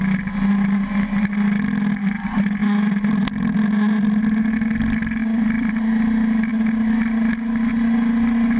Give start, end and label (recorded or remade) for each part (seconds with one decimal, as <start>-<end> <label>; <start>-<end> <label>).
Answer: 0.0-2.6 recorded; 2.6-4.4 remade; 4.4-5.2 recorded; 5.2-5.9 remade; 5.9-6.5 recorded; 6.5-7.7 remade; 7.7-8.6 recorded